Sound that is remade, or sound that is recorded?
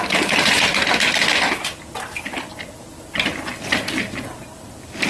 remade